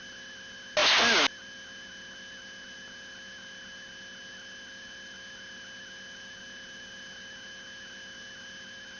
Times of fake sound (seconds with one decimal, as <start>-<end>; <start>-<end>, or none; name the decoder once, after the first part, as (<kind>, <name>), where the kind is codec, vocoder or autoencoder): none